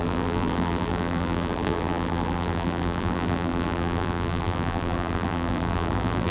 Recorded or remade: remade